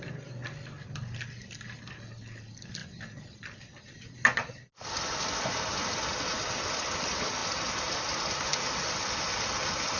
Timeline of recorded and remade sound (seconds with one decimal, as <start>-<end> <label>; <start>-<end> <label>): 0.0-10.0 recorded